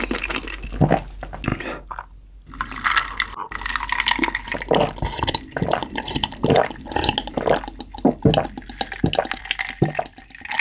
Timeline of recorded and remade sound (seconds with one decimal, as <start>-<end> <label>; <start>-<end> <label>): 0.0-10.6 recorded